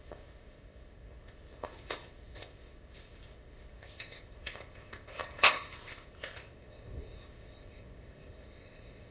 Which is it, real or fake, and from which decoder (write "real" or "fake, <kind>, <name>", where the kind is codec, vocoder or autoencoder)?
fake, codec, ZipCodec